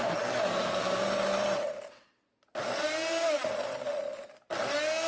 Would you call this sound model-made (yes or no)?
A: no